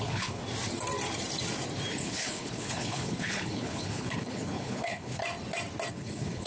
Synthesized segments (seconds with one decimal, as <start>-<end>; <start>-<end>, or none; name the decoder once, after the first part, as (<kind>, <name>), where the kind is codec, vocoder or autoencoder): 0.0-0.4 (codec, HILCodec); 1.9-5.2; 5.9-6.5